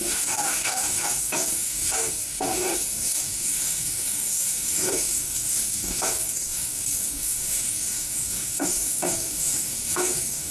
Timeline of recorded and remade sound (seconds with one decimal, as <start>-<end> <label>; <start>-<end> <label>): 0.0-10.5 remade